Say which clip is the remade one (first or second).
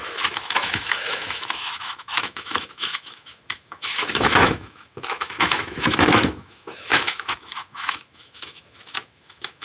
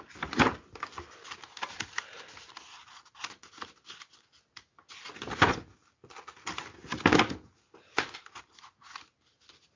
first